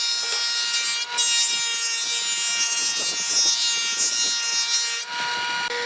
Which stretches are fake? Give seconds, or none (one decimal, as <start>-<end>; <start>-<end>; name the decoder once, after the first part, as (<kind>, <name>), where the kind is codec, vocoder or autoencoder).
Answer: none